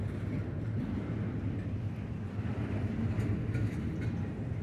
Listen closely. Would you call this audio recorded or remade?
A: recorded